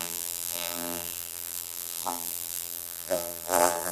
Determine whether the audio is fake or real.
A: fake